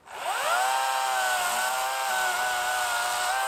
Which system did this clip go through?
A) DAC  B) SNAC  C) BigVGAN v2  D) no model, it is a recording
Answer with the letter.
D